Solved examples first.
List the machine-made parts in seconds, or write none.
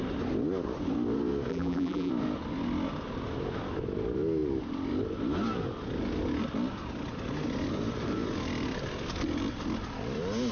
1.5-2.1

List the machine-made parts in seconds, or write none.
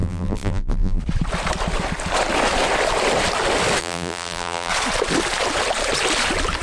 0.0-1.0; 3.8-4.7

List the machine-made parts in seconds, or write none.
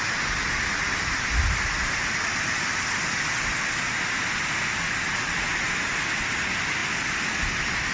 6.8-7.3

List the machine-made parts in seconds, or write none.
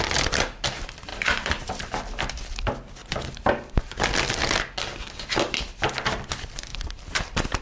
1.1-2.3; 3.0-3.5; 6.7-7.6